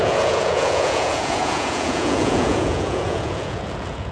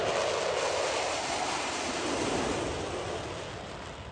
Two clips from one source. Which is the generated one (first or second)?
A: first